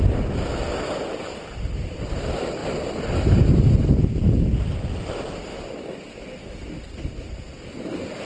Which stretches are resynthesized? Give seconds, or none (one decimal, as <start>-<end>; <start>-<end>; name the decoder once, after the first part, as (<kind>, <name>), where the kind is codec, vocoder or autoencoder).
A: none